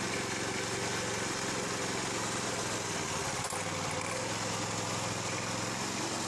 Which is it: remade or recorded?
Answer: recorded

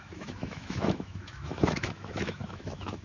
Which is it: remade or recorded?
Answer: remade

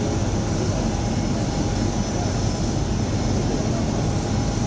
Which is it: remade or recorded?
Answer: recorded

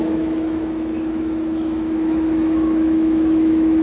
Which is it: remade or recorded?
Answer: remade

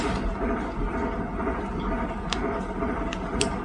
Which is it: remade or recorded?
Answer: recorded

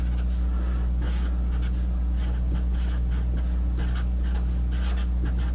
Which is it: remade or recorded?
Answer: recorded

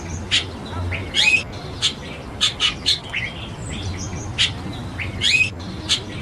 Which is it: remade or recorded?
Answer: recorded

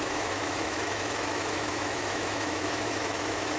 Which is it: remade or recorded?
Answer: remade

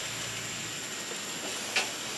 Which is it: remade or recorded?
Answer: recorded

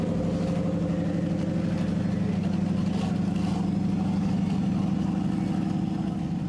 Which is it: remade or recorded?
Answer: recorded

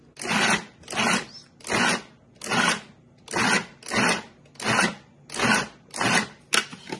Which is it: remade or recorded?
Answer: recorded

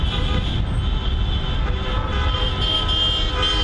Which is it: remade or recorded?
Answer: recorded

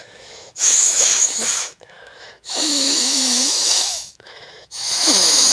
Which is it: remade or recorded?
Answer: remade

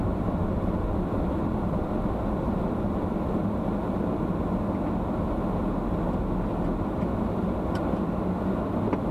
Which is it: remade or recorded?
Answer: recorded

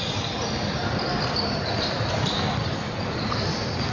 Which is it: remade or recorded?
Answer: recorded